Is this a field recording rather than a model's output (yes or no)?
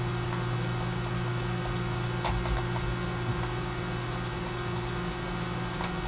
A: yes